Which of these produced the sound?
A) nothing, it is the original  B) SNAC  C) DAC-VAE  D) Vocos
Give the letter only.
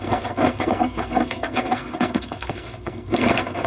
B